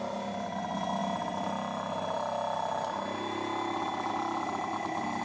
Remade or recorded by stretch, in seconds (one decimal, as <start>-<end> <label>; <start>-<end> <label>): 0.0-5.2 recorded